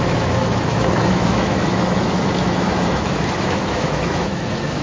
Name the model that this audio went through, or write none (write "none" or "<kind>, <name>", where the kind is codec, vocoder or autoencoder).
autoencoder, DAC-VAE